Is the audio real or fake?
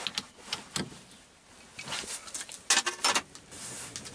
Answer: real